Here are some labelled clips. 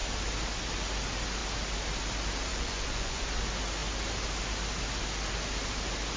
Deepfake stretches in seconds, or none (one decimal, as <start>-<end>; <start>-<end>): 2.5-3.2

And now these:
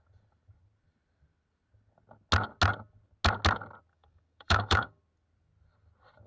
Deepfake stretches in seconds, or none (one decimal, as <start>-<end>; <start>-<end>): 3.9-5.0

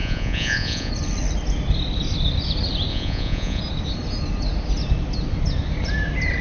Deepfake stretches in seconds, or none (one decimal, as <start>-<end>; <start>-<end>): 0.0-0.9; 2.9-3.6

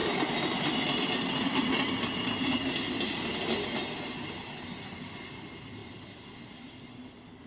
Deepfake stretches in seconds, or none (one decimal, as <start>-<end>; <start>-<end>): none

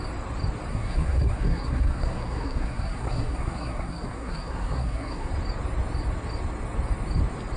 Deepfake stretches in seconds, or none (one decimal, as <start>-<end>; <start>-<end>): 0.7-5.3